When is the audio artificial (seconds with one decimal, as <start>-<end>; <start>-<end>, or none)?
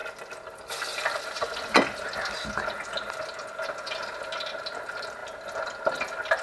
none